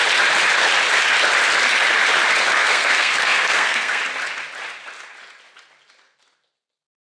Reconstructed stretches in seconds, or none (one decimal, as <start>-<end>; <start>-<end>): 2.6-4.0